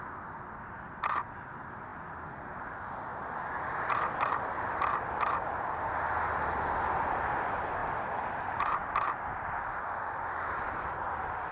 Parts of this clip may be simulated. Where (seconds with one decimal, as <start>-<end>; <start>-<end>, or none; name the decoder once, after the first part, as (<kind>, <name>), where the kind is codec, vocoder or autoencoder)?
none